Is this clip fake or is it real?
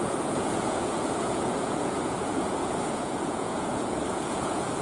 fake